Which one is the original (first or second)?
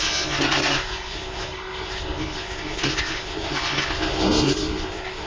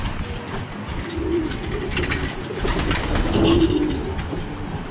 second